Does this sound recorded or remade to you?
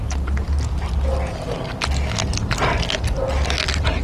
recorded